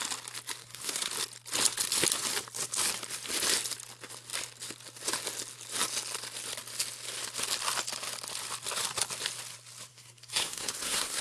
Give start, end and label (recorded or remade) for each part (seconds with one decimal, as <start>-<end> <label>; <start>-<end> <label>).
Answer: 0.0-0.6 recorded; 0.6-1.1 remade; 1.1-9.9 recorded; 9.9-11.2 remade